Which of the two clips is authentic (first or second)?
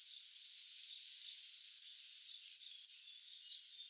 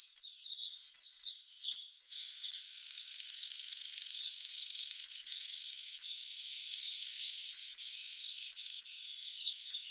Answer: first